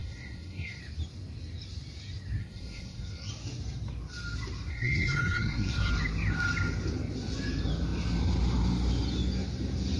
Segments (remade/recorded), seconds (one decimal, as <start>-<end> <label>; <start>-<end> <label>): 0.0-0.8 remade; 0.8-2.4 recorded; 2.4-3.3 remade; 3.3-4.7 recorded; 4.7-5.9 remade; 5.9-10.0 recorded